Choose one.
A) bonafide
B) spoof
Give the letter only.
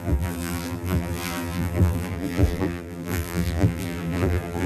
B